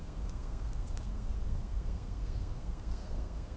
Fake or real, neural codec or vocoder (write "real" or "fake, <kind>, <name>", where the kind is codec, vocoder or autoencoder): fake, codec, SNAC